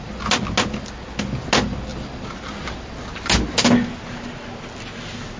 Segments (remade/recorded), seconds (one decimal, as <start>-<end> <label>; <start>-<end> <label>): 0.0-5.4 recorded

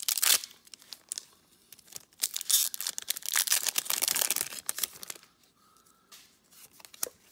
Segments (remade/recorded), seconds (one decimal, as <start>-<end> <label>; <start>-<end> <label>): 0.0-7.3 recorded